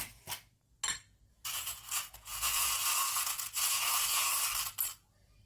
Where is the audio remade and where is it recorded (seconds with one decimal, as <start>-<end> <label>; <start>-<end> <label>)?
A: 0.0-1.3 recorded; 1.3-4.3 remade; 4.3-5.5 recorded